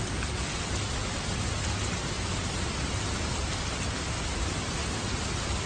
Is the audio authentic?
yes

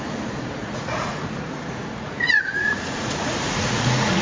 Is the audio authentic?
no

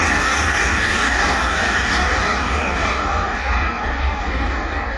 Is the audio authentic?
no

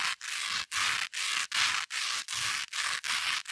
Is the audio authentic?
yes